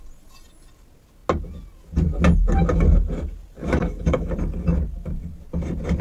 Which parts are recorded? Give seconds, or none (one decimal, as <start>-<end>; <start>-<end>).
0.0-3.6; 4.3-6.0